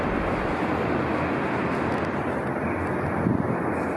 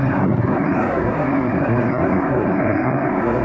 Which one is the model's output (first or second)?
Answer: second